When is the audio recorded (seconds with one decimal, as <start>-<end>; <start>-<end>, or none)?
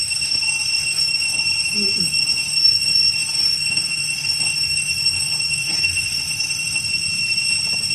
1.4-2.0; 6.9-7.9